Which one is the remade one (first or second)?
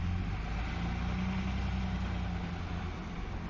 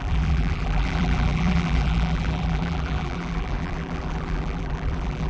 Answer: second